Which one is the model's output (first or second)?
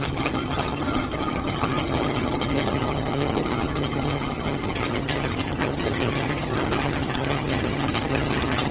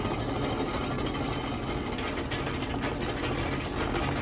first